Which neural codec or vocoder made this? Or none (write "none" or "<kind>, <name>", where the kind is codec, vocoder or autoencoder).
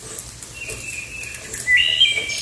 none